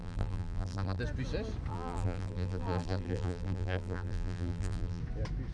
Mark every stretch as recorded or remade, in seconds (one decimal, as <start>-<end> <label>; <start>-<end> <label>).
0.0-1.0 remade; 1.0-1.7 recorded; 1.7-5.0 remade; 5.0-5.5 recorded